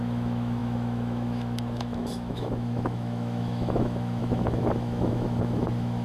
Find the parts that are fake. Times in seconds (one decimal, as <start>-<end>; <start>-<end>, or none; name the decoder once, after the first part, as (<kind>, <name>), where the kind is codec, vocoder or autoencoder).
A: 0.0-6.0 (autoencoder, DAC-VAE)